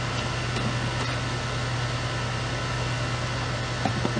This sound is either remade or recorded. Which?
recorded